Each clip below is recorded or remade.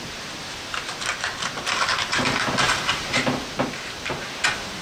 recorded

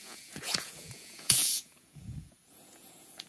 remade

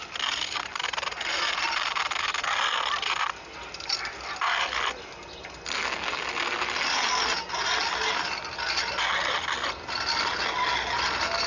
recorded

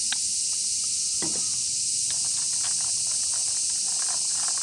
recorded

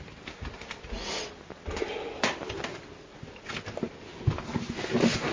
recorded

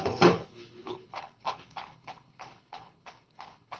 remade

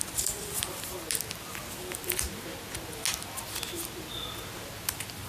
recorded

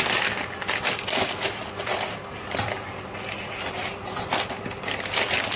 recorded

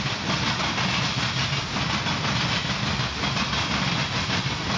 recorded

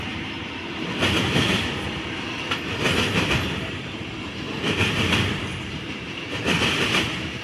remade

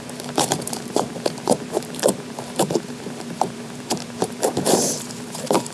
remade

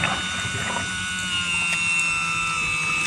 recorded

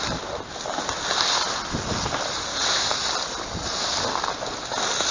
recorded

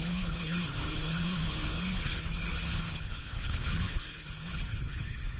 remade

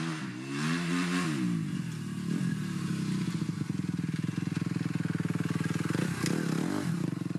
recorded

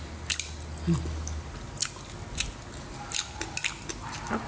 recorded